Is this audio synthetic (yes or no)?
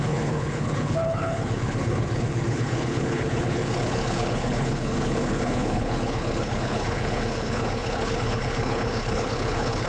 yes